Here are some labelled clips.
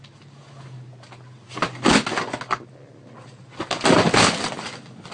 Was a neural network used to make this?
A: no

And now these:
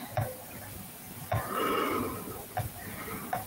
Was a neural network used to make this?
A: no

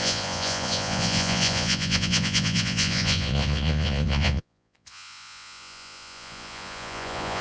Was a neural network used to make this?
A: yes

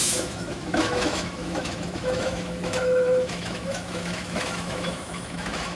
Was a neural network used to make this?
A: yes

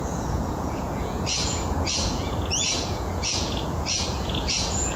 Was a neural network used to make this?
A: yes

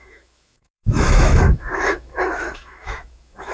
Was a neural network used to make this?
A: yes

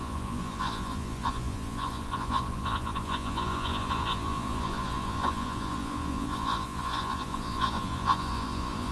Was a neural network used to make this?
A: yes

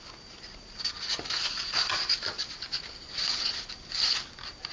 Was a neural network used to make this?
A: no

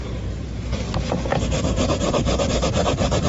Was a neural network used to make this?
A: yes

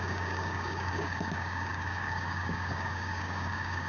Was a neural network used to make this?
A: yes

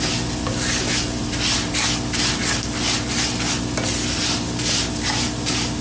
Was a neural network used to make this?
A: no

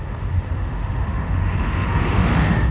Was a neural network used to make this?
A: yes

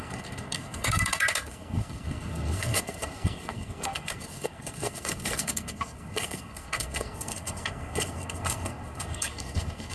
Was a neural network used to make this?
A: yes